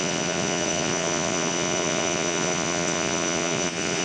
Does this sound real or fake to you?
fake